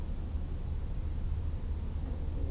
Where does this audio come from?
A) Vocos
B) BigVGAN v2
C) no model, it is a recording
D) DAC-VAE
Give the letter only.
C